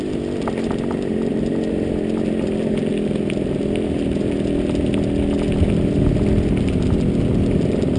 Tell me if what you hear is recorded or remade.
recorded